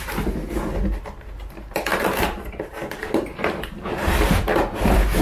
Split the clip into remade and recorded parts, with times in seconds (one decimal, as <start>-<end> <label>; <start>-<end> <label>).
0.0-1.9 recorded; 1.9-5.2 remade